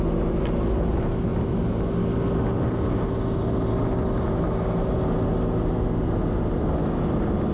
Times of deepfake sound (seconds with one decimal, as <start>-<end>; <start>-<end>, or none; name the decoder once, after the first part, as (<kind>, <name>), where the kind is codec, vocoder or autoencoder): none